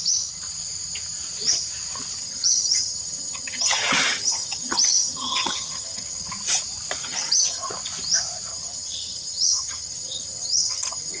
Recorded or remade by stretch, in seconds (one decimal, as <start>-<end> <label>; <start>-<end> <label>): 0.0-2.2 recorded; 2.2-6.3 remade; 6.3-7.0 recorded; 7.0-7.7 remade; 7.7-8.5 recorded; 8.5-11.2 remade